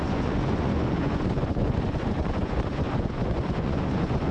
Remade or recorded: remade